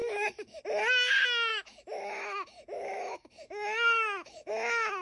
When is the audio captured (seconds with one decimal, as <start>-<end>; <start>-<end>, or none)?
0.6-1.5; 4.5-5.0